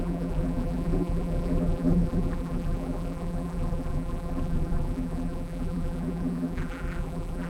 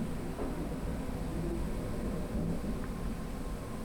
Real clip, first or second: second